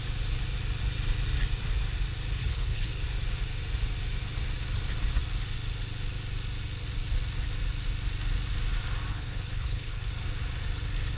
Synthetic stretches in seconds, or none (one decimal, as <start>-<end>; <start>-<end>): 2.4-2.9; 9.1-10.1